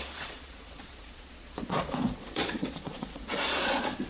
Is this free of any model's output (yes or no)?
no